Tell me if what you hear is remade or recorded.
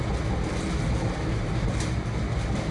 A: recorded